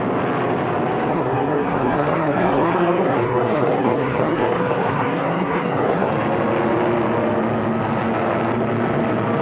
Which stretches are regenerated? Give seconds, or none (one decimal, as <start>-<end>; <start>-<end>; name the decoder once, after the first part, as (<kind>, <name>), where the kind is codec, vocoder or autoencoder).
1.1-6.1 (codec, SNAC)